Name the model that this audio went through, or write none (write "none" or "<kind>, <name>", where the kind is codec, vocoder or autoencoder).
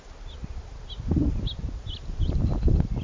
none